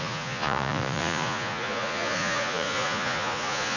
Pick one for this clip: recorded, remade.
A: remade